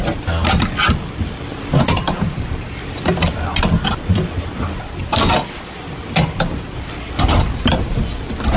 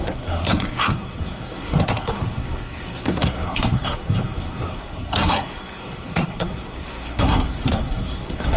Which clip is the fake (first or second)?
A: second